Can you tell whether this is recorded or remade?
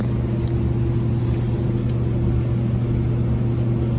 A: recorded